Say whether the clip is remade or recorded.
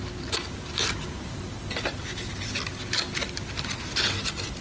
recorded